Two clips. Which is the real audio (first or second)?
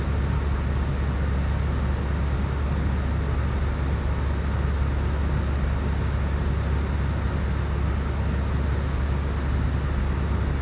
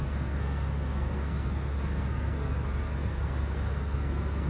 first